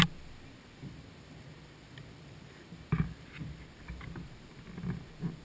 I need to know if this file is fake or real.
real